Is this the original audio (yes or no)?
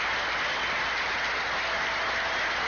yes